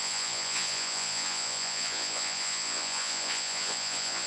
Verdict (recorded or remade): remade